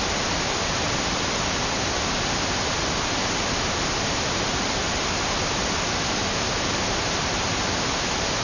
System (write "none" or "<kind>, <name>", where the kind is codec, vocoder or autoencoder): none